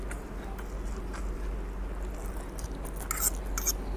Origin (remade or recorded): recorded